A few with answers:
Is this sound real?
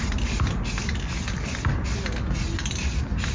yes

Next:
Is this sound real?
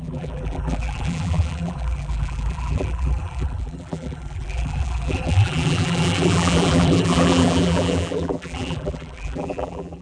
no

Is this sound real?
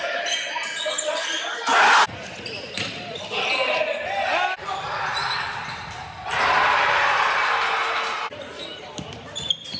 yes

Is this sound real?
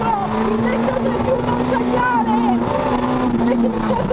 yes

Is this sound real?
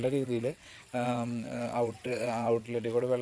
no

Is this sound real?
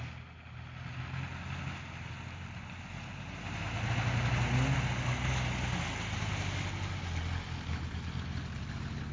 yes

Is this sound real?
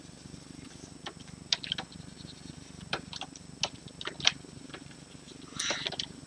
yes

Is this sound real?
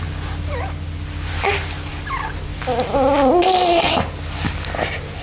yes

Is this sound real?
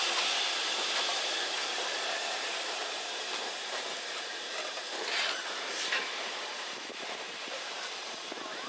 no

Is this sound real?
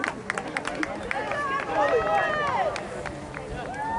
yes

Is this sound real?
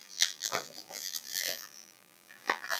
no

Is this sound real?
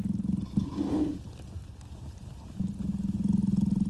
yes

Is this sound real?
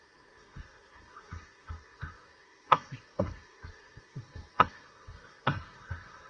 no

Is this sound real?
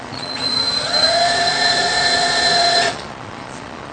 no